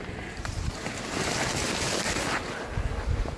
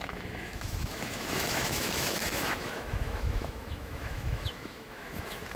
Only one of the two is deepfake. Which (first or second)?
second